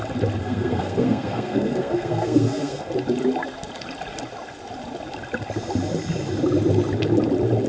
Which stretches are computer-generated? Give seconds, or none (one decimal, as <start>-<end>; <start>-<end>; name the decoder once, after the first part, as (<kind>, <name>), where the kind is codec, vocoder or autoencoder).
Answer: 0.4-2.9 (codec, SNAC)